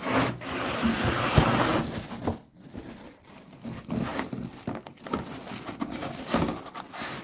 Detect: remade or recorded recorded